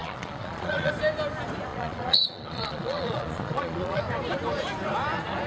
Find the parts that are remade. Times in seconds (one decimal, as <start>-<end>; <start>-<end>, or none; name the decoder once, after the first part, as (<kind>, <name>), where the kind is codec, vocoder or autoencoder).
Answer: 0.0-0.9 (vocoder, Vocos); 1.7-4.0